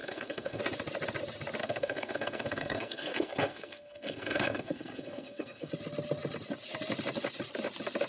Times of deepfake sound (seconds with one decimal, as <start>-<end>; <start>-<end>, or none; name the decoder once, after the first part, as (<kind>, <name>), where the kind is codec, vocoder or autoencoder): 0.0-0.6 (codec, SNAC); 1.6-5.7